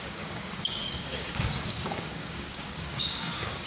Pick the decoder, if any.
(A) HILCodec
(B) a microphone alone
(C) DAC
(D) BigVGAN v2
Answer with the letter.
C